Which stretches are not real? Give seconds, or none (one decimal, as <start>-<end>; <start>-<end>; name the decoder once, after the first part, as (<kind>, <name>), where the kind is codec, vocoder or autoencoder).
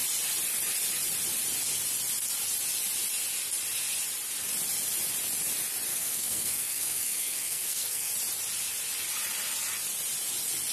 5.9-8.1 (codec, SNAC)